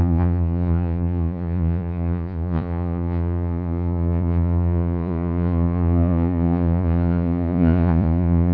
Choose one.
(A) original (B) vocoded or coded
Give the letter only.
B